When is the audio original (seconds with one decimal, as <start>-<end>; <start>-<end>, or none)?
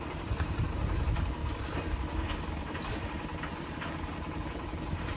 1.4-2.9